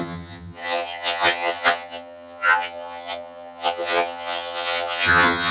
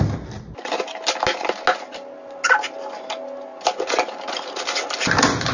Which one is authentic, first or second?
second